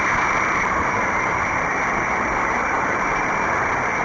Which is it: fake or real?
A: fake